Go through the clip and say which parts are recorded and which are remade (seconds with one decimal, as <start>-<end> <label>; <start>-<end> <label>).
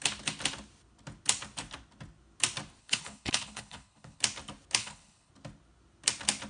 0.0-2.8 recorded; 2.8-4.2 remade; 4.2-4.8 recorded; 4.8-5.3 remade; 5.3-6.5 recorded